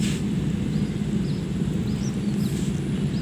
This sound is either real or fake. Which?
real